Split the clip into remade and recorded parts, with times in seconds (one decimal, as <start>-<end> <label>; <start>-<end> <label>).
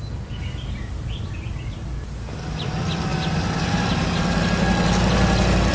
0.0-5.7 recorded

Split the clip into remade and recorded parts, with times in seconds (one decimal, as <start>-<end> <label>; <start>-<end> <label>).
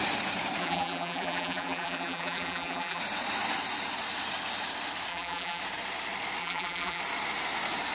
0.0-0.6 recorded; 0.6-3.0 remade; 3.0-5.1 recorded; 5.1-5.6 remade; 5.6-6.4 recorded; 6.4-7.0 remade; 7.0-7.9 recorded